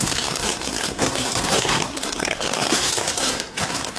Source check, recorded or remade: remade